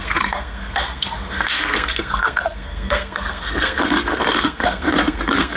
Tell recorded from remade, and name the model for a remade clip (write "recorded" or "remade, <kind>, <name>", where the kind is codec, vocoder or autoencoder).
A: remade, codec, SNAC